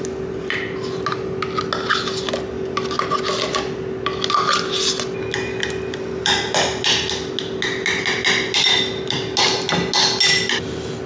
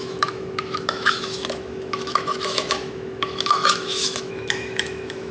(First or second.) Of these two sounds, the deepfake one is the second